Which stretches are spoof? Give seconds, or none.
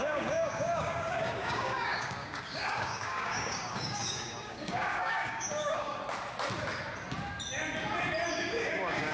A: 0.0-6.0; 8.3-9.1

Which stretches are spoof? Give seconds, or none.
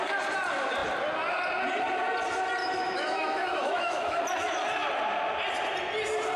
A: 2.6-4.2